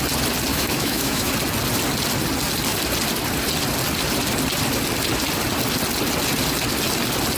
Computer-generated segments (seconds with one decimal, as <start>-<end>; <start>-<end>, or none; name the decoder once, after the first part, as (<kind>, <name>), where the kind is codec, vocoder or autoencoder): 0.5-1.3 (autoencoder, DAC-VAE)